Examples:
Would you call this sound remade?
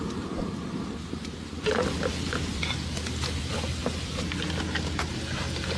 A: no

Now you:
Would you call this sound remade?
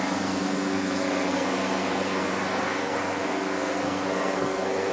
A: yes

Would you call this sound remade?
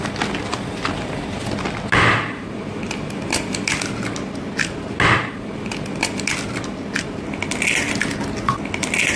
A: no